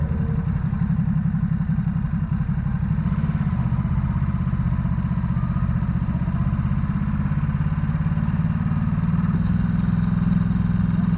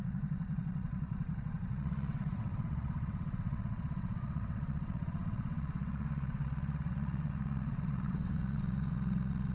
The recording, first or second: first